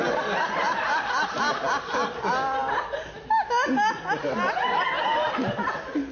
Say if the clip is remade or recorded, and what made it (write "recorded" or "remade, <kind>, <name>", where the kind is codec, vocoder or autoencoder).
recorded